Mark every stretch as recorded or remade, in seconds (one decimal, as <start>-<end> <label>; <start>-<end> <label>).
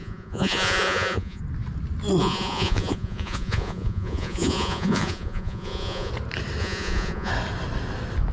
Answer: 0.0-1.4 remade; 1.4-2.2 recorded; 2.2-6.1 remade; 6.1-6.6 recorded; 6.6-7.3 remade; 7.3-8.3 recorded